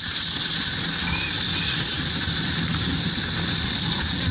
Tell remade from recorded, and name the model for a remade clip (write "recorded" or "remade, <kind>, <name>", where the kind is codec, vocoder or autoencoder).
recorded